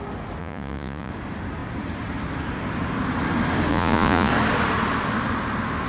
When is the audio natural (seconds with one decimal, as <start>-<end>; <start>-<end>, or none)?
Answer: 0.0-0.4; 1.1-3.7; 4.3-5.9